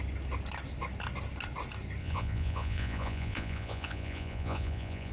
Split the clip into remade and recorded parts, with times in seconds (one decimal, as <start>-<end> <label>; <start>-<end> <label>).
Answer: 0.0-2.0 recorded; 2.0-5.1 remade